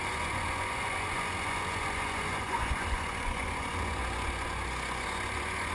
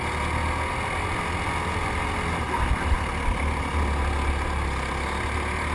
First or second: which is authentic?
second